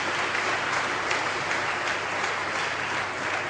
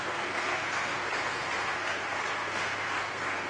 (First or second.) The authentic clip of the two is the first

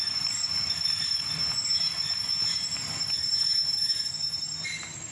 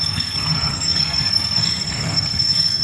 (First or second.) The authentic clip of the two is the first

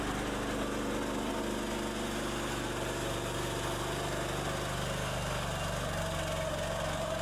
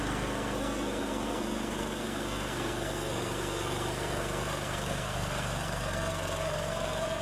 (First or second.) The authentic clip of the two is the first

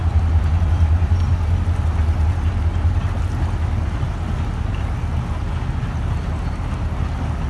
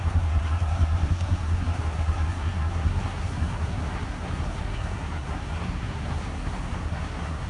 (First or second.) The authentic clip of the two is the first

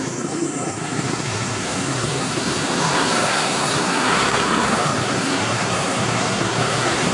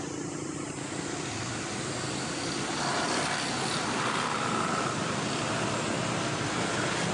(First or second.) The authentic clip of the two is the second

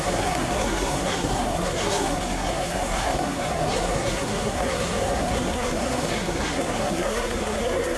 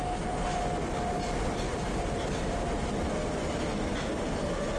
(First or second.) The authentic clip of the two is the second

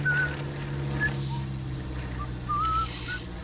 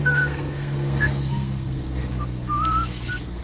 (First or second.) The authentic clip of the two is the first